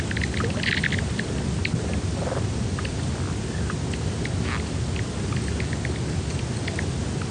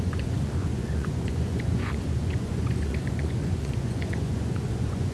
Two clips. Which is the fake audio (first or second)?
second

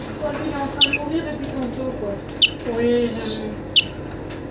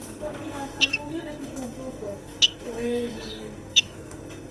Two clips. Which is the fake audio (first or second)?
second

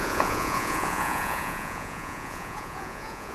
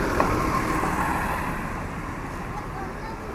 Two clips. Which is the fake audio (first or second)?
first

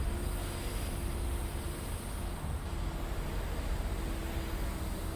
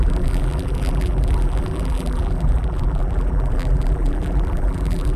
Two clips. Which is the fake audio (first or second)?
second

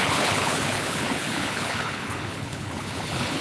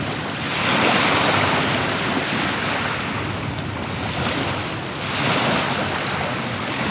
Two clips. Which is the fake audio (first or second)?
first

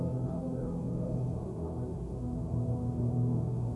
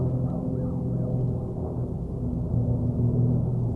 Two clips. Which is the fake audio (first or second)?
first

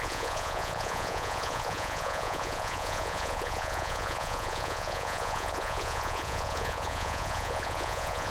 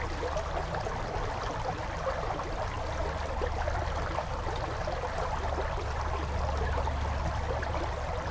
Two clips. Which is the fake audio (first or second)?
first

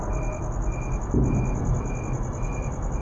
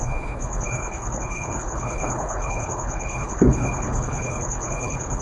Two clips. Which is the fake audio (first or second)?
second